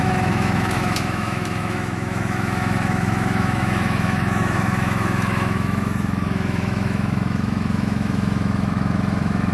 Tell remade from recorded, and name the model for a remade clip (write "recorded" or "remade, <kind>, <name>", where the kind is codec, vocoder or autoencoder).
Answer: remade, autoencoder, DAC-VAE